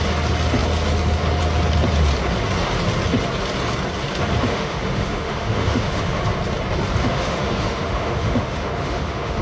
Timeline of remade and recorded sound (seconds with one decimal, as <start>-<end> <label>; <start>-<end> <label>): 0.0-4.5 recorded; 4.5-6.2 remade; 6.2-7.0 recorded; 7.0-9.4 remade